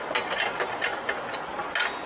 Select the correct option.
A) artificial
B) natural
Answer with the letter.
B